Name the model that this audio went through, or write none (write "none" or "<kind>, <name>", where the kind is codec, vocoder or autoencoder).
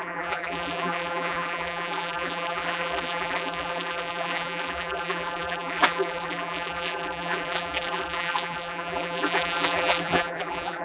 vocoder, BigVGAN v2